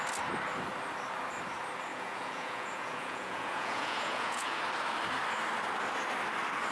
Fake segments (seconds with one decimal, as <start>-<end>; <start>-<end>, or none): 1.9-4.6